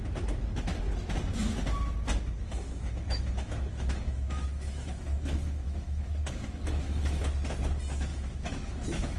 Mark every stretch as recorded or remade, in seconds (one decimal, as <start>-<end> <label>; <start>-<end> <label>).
0.0-2.4 recorded; 2.4-7.2 remade; 7.2-8.1 recorded; 8.1-9.2 remade